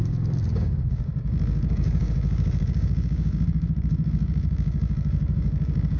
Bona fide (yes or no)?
no